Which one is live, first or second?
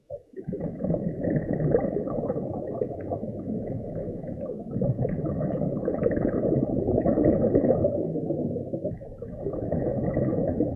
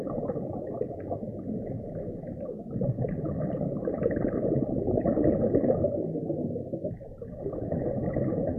second